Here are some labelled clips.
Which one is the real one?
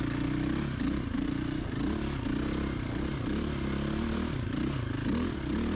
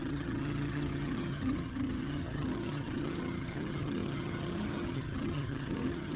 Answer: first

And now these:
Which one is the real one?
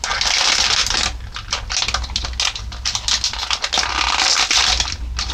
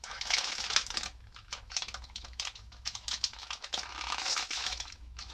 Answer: first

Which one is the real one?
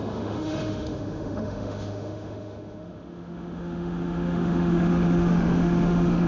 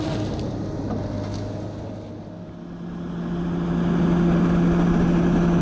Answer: second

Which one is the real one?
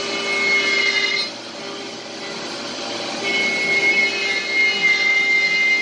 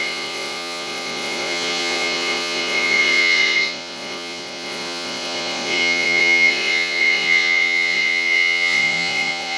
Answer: first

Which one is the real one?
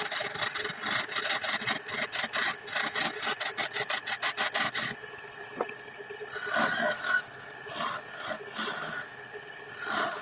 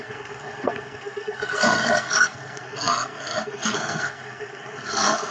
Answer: first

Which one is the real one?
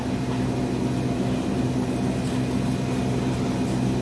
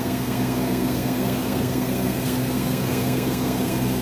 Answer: first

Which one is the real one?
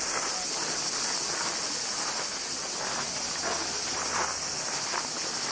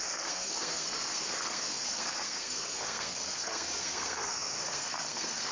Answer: first